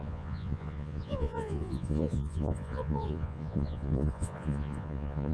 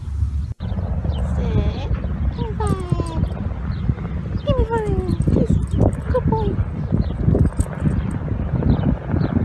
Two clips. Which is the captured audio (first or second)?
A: second